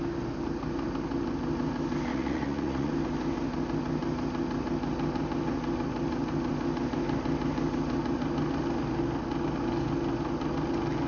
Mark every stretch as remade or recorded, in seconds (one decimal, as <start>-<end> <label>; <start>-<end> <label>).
0.0-2.1 recorded; 2.1-2.9 remade; 2.9-11.1 recorded